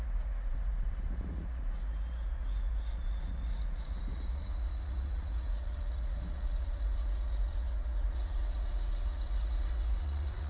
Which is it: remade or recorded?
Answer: remade